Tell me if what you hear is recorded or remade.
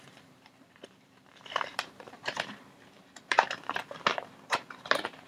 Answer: remade